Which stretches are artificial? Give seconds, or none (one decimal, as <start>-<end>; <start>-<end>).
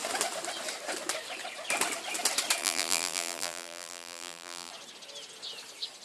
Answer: 2.6-4.7